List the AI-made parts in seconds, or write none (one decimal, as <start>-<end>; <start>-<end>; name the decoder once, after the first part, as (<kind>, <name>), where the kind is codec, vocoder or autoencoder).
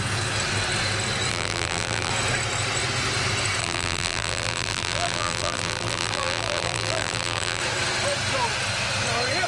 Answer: 1.3-2.1 (vocoder, BigVGAN v2); 3.6-7.6